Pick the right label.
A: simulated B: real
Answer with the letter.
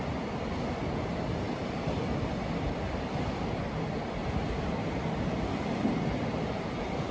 B